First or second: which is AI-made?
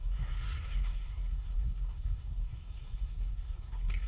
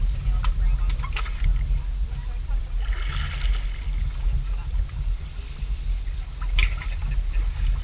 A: first